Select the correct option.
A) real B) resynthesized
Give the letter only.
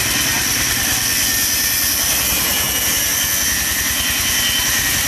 A